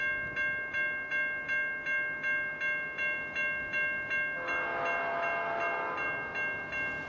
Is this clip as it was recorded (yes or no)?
yes